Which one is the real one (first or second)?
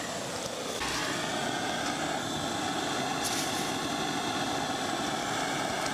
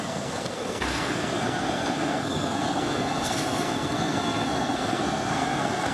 first